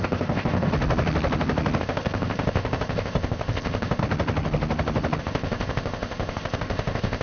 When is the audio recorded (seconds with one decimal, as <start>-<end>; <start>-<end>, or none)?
0.7-1.8; 4.0-5.2